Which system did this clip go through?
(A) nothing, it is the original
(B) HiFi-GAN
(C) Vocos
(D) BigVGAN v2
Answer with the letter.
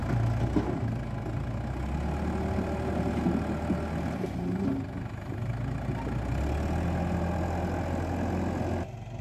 A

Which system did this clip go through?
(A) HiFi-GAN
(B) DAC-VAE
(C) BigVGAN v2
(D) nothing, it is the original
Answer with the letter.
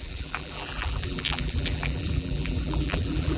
C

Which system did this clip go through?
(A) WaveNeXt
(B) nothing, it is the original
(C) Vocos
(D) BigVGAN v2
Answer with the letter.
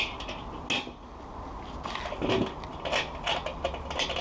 B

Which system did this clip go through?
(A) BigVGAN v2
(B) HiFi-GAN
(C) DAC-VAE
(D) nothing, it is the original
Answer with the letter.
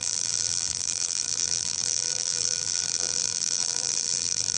A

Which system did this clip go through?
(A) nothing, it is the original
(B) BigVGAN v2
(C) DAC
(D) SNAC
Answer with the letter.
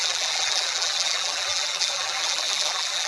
B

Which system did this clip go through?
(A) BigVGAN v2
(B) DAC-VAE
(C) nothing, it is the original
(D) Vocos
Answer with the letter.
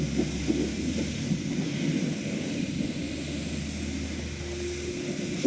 C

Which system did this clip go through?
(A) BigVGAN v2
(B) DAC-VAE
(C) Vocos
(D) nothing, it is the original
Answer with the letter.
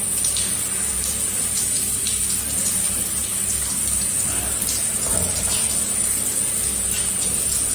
A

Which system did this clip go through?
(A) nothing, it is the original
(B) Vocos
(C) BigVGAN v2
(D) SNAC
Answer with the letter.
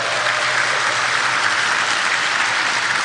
C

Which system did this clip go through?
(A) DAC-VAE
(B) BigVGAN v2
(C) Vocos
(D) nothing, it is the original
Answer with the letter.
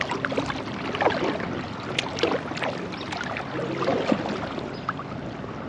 D